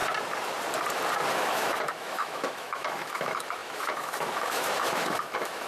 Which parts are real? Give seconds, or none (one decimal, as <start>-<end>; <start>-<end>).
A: 0.0-1.3